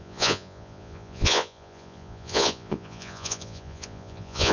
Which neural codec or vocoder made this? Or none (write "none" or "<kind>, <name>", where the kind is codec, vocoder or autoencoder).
vocoder, Vocos